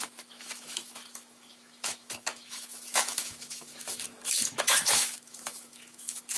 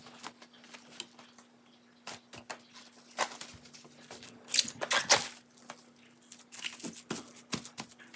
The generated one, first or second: first